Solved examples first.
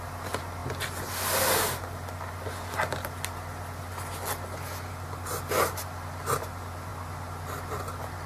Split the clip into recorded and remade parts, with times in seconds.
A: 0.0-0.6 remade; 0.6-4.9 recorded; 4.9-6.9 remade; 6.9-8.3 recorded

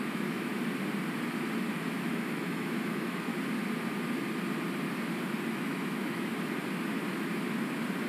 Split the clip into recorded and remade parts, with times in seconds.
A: 0.0-0.5 remade; 0.5-2.1 recorded; 2.1-3.3 remade; 3.3-5.5 recorded; 5.5-6.3 remade; 6.3-8.1 recorded

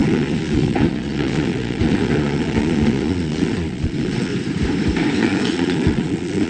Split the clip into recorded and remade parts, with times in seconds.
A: 0.0-4.3 remade; 4.3-5.2 recorded; 5.2-6.5 remade

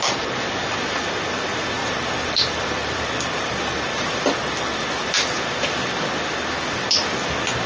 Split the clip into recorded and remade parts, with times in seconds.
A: 0.0-1.8 recorded; 1.8-4.8 remade; 4.8-7.7 recorded

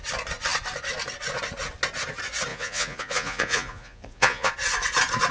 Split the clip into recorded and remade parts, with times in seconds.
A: 0.0-2.5 recorded; 2.5-4.5 remade; 4.5-5.3 recorded

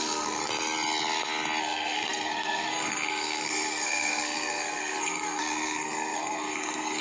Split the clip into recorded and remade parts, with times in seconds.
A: 0.0-0.4 remade; 0.4-1.6 recorded; 1.6-7.0 remade